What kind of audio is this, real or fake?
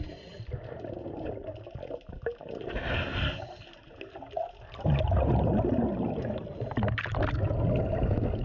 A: real